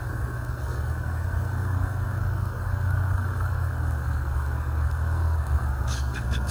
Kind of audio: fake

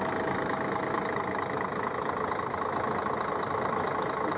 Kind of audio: real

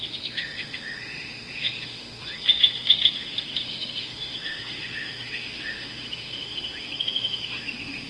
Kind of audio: fake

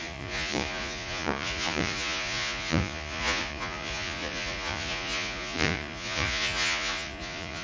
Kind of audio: fake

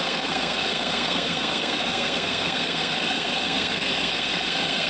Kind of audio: fake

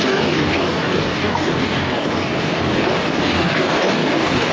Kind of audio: fake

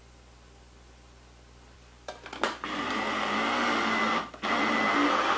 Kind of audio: real